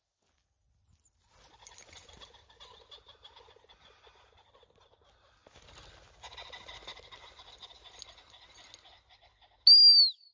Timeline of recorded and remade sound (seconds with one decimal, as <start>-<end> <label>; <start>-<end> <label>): 0.0-10.3 recorded